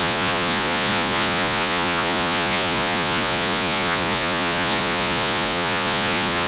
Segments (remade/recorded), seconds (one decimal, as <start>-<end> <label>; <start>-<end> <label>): 0.0-6.5 remade